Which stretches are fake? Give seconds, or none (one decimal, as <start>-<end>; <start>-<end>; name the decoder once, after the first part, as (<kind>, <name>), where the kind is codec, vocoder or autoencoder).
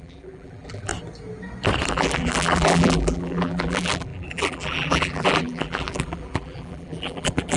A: 0.0-0.9 (vocoder, BigVGAN v2); 1.9-7.6